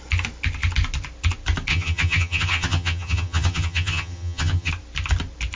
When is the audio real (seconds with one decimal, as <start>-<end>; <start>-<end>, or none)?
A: 0.0-1.7; 4.7-5.6